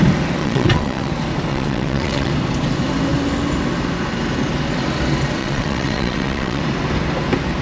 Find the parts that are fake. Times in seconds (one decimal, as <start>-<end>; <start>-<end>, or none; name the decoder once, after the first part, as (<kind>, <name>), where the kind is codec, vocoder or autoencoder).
0.4-1.1 (vocoder, WaveNeXt); 1.5-2.3; 5.4-6.6